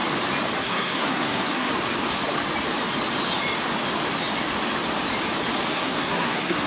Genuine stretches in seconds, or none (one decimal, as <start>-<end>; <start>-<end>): 0.0-0.6; 1.7-5.7